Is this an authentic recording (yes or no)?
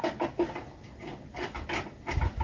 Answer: yes